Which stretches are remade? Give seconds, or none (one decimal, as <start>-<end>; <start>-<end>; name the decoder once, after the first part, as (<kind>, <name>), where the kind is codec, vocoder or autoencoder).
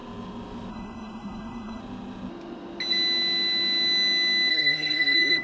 0.7-1.8 (codec, SNAC); 4.5-5.4